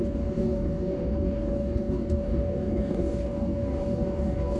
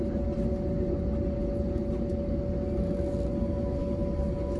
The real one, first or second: second